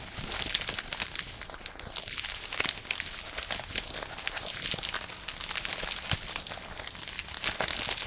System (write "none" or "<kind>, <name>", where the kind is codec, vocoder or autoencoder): none